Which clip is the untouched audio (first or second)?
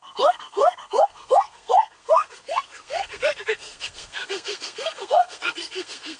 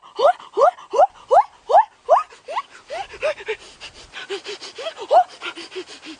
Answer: second